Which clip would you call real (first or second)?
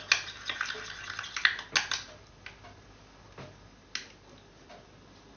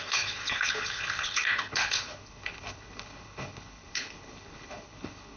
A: first